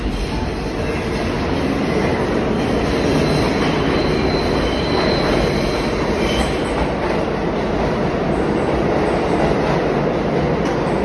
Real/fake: real